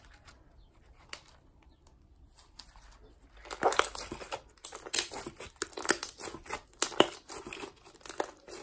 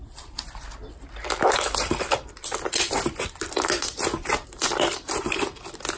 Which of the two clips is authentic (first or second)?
first